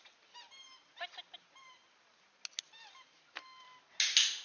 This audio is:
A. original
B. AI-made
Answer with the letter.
A